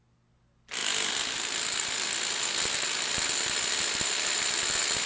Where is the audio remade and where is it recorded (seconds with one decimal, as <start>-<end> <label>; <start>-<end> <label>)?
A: 0.0-5.1 recorded